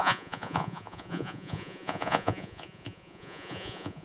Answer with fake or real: fake